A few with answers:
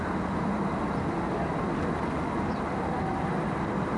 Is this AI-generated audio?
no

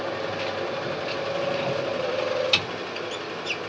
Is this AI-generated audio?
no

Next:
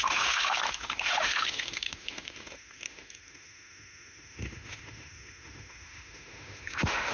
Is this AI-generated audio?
yes